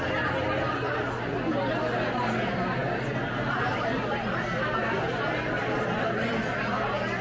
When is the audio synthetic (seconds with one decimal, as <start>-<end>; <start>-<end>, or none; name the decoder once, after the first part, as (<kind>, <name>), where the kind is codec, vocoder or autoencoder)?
none